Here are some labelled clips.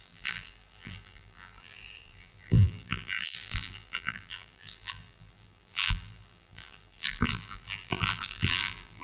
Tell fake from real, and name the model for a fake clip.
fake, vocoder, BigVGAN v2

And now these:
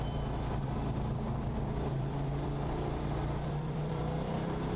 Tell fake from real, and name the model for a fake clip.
fake, vocoder, BigVGAN v2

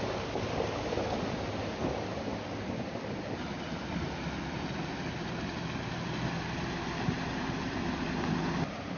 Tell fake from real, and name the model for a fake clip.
real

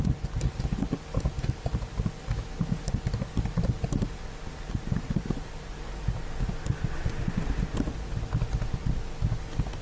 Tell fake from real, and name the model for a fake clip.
real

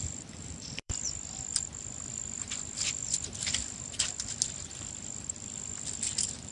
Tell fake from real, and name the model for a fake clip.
fake, vocoder, BigVGAN v2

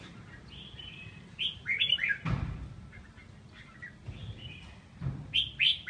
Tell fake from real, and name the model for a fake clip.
fake, vocoder, BigVGAN v2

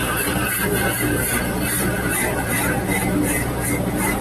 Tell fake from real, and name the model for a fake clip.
fake, vocoder, BigVGAN v2